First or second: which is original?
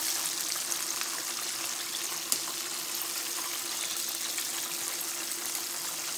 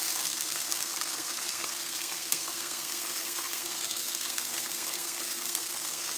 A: first